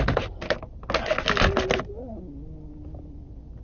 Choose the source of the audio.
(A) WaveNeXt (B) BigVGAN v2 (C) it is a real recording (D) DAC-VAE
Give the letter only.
C